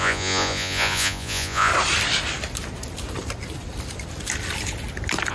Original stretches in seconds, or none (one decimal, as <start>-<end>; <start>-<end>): 1.7-5.3